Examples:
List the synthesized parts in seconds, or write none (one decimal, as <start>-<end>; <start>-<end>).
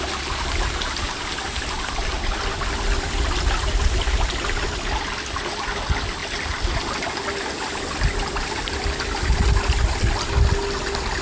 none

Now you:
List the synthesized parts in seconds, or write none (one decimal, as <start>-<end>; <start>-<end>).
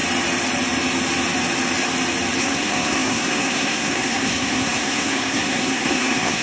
2.4-6.4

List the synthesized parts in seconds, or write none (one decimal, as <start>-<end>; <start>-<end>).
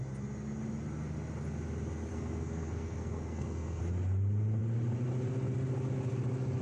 2.1-3.8